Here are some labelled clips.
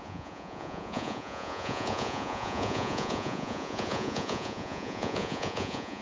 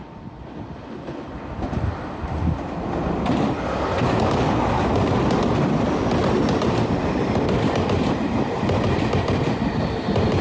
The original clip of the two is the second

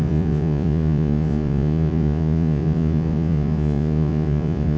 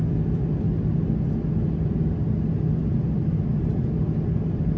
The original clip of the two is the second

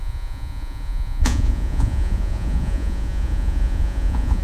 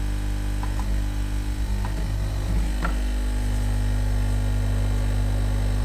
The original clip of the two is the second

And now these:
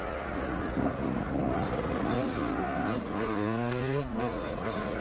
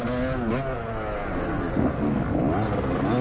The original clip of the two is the second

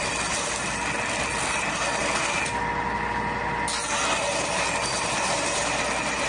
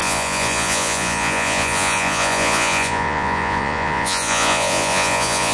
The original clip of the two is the first